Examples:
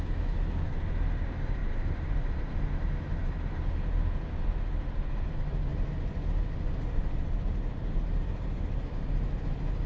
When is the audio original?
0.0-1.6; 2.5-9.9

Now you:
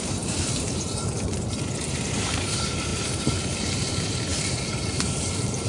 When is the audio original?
none

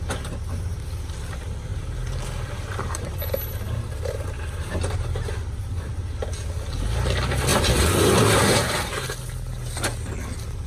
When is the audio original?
0.0-1.7; 5.9-7.5; 8.0-10.7

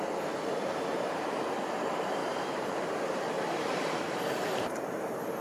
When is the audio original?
0.0-2.2